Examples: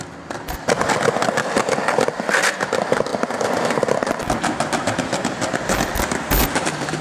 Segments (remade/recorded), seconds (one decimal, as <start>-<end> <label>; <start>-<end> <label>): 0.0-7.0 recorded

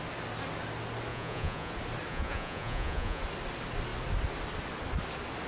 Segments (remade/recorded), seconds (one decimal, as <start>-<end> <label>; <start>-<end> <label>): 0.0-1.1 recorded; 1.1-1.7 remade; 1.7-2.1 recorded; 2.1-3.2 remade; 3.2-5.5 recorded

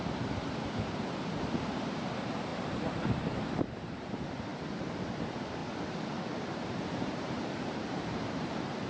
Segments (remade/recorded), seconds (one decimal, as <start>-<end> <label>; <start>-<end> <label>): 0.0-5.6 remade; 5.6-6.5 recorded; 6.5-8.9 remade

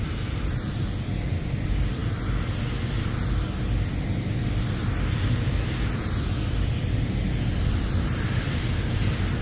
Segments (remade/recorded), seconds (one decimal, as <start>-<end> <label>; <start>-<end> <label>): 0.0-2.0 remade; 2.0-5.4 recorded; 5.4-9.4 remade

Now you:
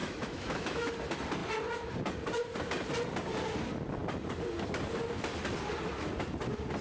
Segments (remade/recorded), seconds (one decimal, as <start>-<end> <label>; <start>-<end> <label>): 0.0-0.9 remade; 0.9-6.8 recorded

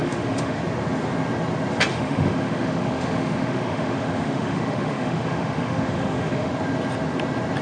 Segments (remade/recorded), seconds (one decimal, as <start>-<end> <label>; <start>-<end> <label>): 0.0-0.6 remade; 0.6-1.9 recorded; 1.9-6.5 remade; 6.5-7.6 recorded